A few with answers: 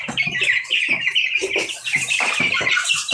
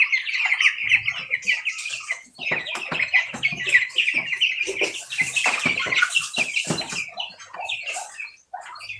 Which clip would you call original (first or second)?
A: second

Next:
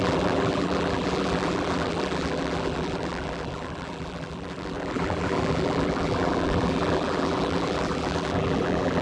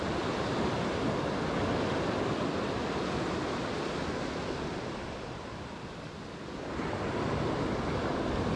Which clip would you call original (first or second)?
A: second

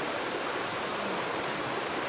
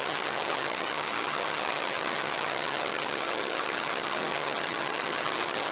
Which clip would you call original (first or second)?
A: first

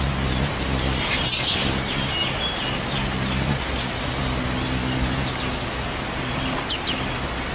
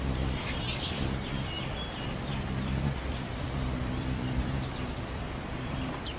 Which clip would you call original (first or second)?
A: first